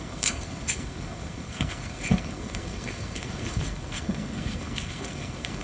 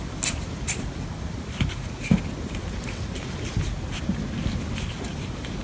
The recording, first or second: second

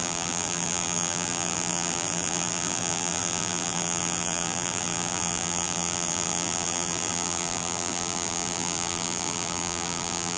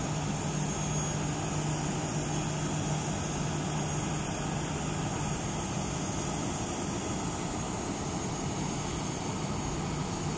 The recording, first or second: second